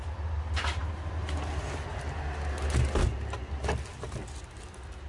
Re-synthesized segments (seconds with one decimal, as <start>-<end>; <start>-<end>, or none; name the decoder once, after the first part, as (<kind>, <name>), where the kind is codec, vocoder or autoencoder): none